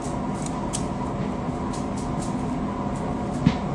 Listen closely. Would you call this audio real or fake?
real